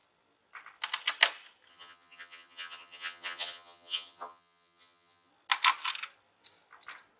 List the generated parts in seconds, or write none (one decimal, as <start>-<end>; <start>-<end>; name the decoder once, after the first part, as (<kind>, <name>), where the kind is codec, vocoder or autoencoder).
1.7-5.3 (vocoder, HiFi-GAN)